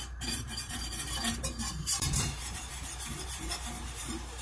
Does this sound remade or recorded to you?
remade